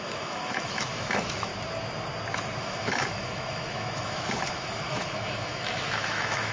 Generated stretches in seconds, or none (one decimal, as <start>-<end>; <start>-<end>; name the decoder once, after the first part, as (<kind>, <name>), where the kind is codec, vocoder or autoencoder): 0.0-1.5 (autoencoder, DAC-VAE); 2.6-6.5